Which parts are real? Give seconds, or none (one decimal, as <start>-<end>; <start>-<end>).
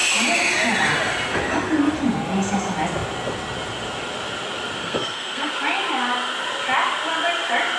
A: 0.0-4.8; 5.5-7.8